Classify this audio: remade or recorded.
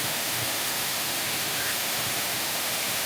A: remade